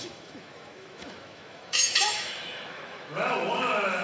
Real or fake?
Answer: fake